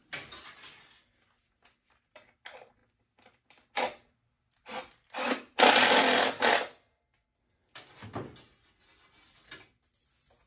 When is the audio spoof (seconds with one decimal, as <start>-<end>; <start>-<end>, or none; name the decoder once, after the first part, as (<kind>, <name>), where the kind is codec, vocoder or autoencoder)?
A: none